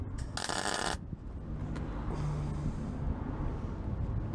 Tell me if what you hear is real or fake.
real